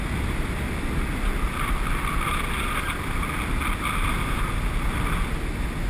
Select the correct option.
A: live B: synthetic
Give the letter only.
A